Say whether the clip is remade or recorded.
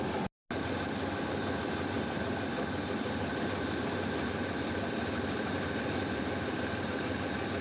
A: recorded